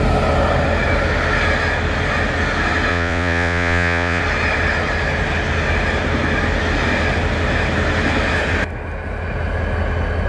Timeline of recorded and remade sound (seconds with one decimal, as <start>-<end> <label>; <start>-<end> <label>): 0.0-2.9 recorded; 2.9-4.2 remade; 4.2-10.3 recorded